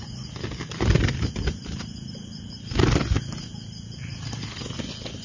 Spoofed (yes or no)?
no